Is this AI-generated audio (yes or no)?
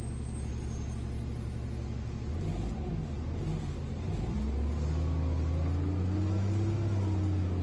no